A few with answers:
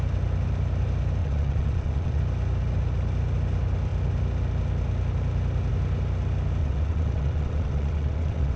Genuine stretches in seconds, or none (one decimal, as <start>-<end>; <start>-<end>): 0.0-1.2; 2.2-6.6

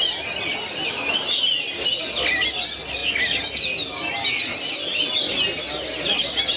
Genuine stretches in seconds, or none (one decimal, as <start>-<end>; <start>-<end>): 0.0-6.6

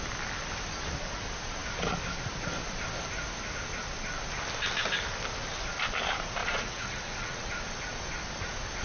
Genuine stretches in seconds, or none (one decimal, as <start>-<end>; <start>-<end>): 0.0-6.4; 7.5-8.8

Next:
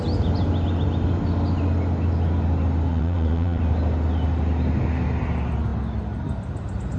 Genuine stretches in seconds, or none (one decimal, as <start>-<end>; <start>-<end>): 0.0-2.9; 3.6-7.0